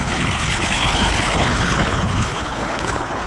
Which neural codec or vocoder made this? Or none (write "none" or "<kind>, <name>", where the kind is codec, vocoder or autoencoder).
codec, HILCodec